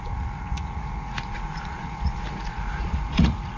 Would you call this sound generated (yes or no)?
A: yes